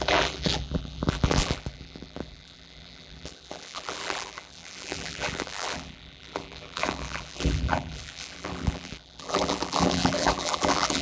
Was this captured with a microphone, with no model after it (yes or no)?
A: no